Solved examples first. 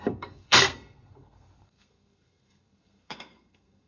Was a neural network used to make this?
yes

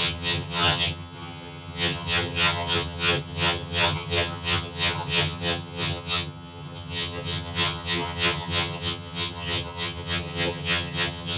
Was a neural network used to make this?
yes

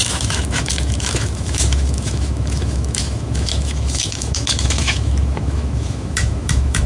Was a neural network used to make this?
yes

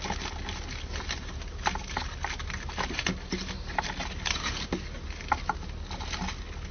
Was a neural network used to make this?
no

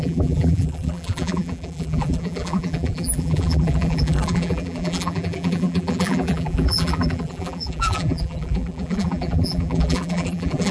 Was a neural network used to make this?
yes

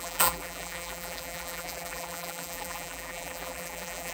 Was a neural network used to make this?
yes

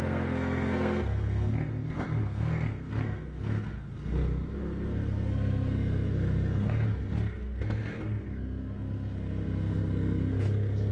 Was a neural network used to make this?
yes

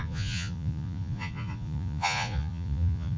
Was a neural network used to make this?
yes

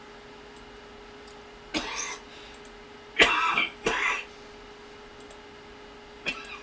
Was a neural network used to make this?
no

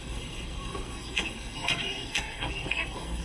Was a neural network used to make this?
yes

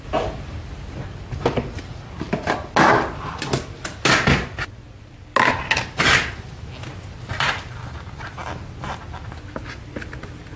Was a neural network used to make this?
no